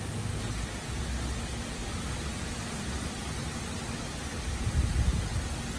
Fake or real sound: real